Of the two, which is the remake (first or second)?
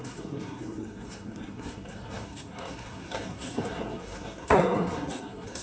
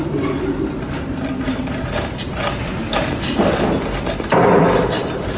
first